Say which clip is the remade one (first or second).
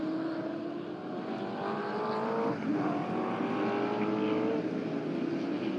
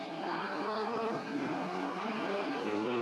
second